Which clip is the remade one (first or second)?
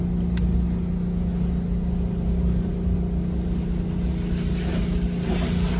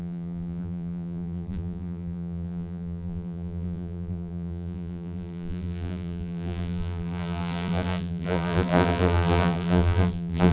second